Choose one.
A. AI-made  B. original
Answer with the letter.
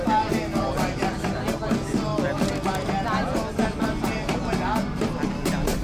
B